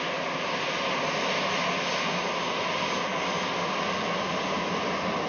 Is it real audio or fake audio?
real